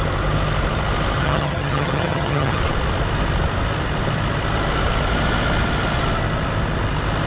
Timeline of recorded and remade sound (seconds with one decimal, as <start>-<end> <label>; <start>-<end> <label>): 0.0-1.2 recorded; 1.2-2.6 remade; 2.6-7.3 recorded